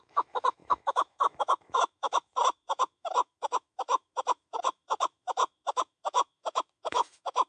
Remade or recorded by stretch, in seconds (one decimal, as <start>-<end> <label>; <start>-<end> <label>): 0.0-7.5 remade